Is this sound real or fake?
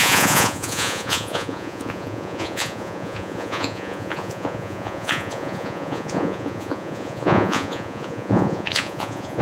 fake